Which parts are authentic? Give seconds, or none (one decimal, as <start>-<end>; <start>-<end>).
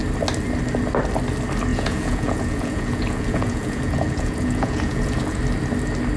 0.0-1.7; 5.4-6.2